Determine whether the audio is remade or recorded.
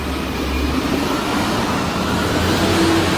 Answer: recorded